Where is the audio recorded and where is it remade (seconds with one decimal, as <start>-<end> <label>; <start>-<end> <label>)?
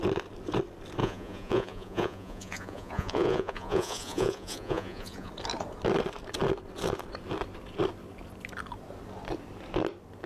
0.0-1.0 recorded; 1.0-5.3 remade; 5.3-10.3 recorded